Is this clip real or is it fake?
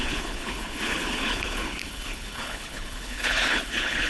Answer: fake